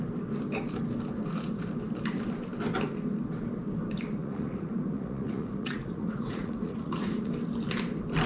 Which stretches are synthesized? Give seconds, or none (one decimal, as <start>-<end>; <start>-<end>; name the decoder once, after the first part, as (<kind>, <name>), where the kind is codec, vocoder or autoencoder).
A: 4.2-7.3 (vocoder, Vocos)